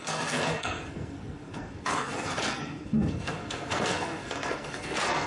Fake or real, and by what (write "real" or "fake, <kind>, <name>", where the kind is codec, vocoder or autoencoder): fake, codec, SNAC